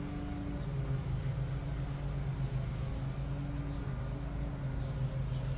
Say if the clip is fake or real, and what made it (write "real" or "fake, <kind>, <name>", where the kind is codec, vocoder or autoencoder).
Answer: real